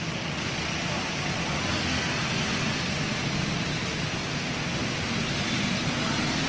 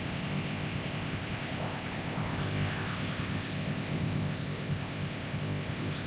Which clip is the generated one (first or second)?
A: second